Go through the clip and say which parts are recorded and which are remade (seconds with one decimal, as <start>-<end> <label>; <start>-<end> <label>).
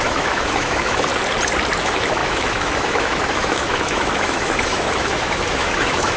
0.0-1.1 remade; 1.1-1.8 recorded; 1.8-6.2 remade